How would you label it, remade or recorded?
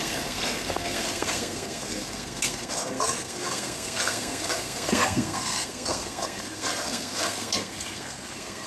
remade